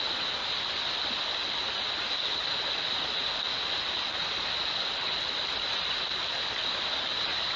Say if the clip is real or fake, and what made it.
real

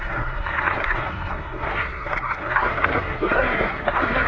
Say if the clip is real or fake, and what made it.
fake, codec, SNAC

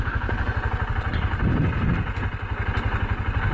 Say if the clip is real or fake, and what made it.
real